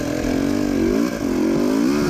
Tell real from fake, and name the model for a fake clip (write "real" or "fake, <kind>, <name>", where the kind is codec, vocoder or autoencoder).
real